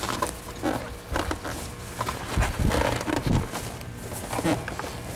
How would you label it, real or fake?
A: real